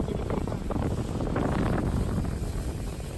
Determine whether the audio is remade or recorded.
recorded